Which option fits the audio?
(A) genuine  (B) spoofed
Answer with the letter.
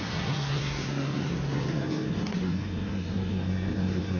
B